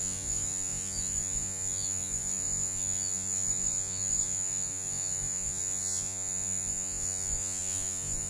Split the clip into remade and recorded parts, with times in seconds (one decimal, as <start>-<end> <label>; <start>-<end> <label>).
0.0-8.3 remade

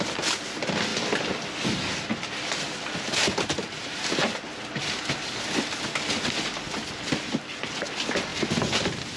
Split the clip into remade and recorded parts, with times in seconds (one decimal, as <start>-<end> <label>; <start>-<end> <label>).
0.0-9.2 recorded

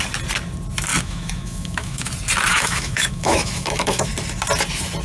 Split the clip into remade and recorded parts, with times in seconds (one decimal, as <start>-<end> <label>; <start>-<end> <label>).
0.0-0.9 recorded; 0.9-2.1 remade; 2.1-2.5 recorded; 2.5-4.1 remade; 4.1-5.0 recorded

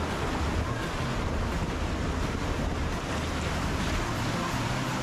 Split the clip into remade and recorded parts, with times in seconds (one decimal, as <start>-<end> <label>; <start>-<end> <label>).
0.0-5.0 recorded

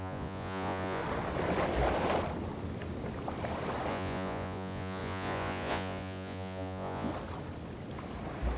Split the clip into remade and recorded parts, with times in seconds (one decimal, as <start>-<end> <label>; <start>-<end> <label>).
0.0-1.0 remade; 1.0-3.9 recorded; 3.9-7.1 remade; 7.1-8.6 recorded

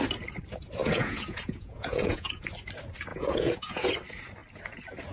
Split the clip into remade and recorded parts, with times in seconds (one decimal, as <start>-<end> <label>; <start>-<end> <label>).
0.0-0.8 recorded; 0.8-2.4 remade; 2.4-3.1 recorded; 3.1-3.9 remade; 3.9-5.1 recorded